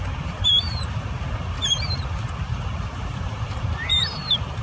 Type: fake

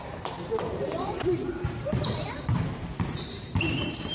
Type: fake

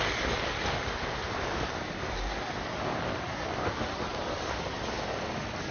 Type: real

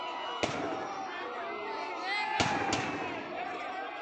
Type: real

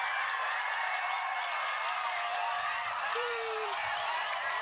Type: fake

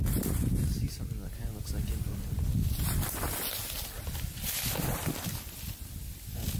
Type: real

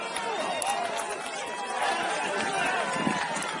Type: real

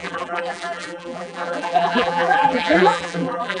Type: fake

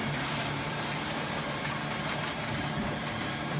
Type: fake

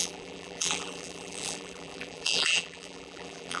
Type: fake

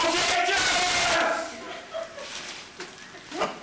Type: fake